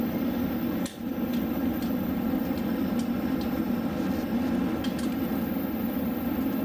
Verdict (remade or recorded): recorded